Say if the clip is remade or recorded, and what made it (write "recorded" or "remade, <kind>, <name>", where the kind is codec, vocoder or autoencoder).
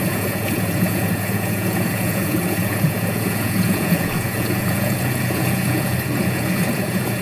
remade, vocoder, Vocos